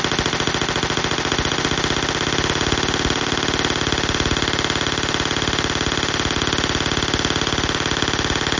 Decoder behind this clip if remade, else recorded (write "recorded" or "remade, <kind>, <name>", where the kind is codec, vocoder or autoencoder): recorded